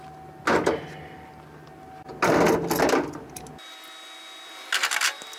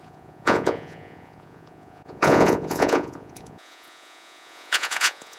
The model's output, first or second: second